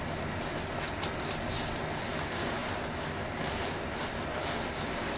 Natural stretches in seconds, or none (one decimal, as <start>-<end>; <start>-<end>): 0.0-5.2